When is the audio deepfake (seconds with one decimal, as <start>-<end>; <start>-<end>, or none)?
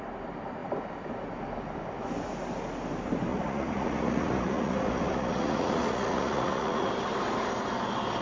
3.3-6.9